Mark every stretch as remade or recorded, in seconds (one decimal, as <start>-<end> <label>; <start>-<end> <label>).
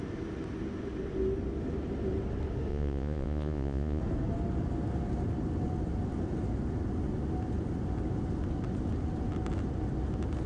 0.0-2.7 recorded; 2.7-4.0 remade; 4.0-10.5 recorded